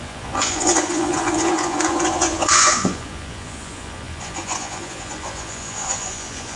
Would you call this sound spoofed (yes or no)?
yes